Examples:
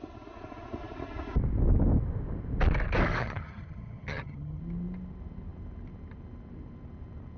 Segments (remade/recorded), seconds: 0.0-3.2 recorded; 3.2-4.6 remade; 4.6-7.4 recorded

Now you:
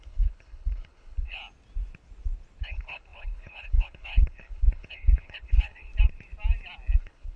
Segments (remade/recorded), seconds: 0.0-1.4 remade; 1.4-2.6 recorded; 2.6-5.9 remade; 5.9-7.0 recorded; 7.0-7.4 remade